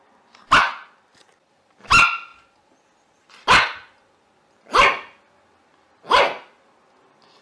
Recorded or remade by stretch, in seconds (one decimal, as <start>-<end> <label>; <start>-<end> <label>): 0.0-7.4 recorded